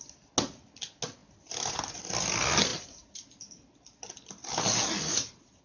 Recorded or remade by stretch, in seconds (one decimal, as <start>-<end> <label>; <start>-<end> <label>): 0.0-5.6 recorded

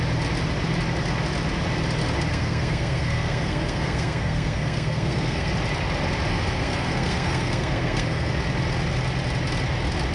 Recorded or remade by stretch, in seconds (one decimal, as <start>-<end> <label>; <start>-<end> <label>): 0.0-2.3 recorded; 2.3-5.5 remade; 5.5-6.3 recorded; 6.3-8.3 remade; 8.3-10.1 recorded

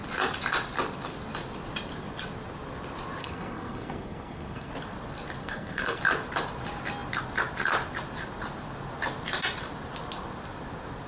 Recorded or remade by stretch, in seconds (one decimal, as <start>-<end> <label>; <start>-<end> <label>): 0.0-3.2 recorded; 3.2-4.7 remade; 4.7-5.4 recorded; 5.4-6.0 remade; 6.0-11.1 recorded

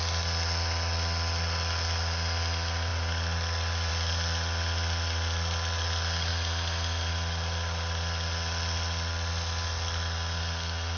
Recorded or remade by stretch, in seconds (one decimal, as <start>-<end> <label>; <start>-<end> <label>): 0.0-11.0 recorded

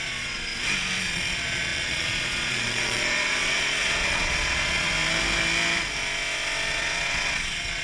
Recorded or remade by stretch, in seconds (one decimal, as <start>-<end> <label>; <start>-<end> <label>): 0.0-0.5 remade; 0.5-1.0 recorded; 1.0-4.9 remade; 4.9-6.7 recorded; 6.7-7.8 remade

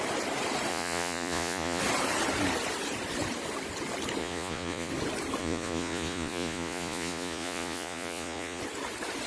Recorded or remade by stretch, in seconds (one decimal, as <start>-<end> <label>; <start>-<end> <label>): 0.0-0.7 recorded; 0.7-1.8 remade; 1.8-4.2 recorded; 4.2-4.9 remade; 4.9-5.4 recorded; 5.4-8.6 remade; 8.6-9.3 recorded

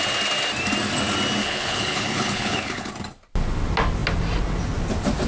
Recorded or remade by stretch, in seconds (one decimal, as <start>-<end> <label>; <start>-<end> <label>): 0.0-1.4 recorded; 1.4-2.9 remade; 2.9-5.3 recorded